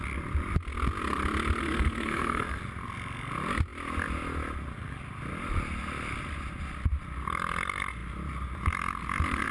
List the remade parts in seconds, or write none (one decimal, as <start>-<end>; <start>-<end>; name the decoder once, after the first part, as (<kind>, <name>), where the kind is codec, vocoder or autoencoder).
1.6-2.6 (codec, SNAC)